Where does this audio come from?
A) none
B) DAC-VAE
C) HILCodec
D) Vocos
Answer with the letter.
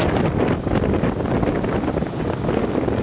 A